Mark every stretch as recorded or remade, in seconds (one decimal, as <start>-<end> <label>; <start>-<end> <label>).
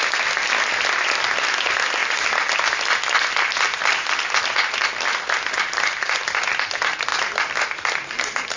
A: 0.0-8.6 recorded